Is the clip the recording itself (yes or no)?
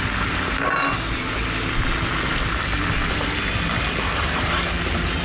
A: yes